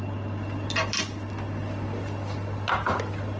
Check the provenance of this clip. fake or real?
real